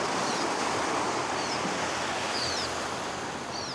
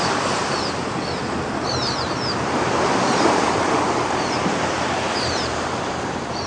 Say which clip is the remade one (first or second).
second